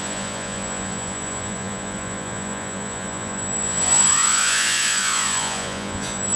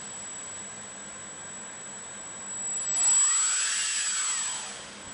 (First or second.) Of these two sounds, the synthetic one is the first